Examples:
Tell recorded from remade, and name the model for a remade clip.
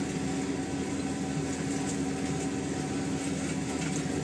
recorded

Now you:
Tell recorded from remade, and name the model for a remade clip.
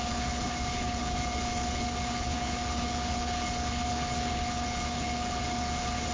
remade, codec, HILCodec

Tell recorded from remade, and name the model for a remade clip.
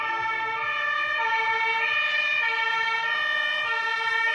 recorded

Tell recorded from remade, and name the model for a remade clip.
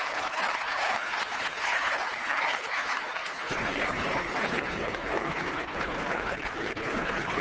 remade, codec, HILCodec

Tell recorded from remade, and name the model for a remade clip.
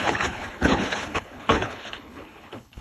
remade, codec, HILCodec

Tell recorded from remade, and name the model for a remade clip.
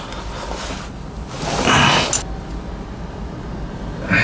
recorded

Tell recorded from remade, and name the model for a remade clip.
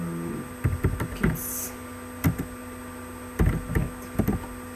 recorded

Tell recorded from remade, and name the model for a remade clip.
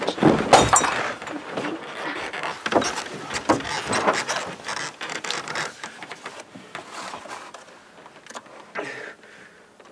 recorded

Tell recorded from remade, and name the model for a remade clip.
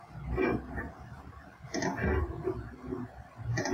recorded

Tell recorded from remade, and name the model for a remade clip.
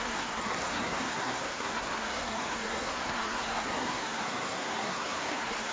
remade, codec, SNAC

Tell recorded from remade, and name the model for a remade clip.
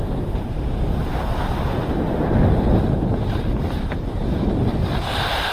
recorded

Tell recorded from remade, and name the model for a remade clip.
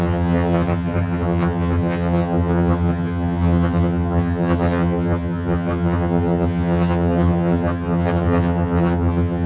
remade, vocoder, HiFi-GAN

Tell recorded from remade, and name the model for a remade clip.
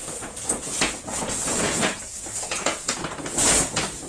remade, vocoder, Vocos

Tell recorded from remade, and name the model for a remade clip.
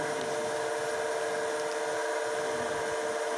recorded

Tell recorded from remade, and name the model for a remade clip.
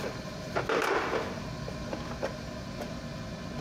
recorded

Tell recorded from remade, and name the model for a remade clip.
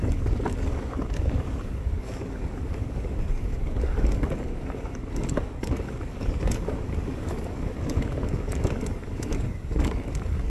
remade, codec, DAC